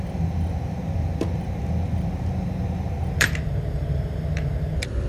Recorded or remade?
remade